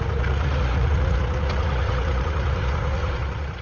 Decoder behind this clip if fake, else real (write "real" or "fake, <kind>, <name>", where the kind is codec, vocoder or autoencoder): fake, vocoder, Vocos